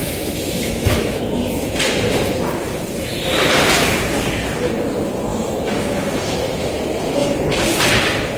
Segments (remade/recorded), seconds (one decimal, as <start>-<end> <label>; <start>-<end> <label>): 0.0-1.2 remade; 1.2-5.3 recorded; 5.3-6.8 remade; 6.8-8.4 recorded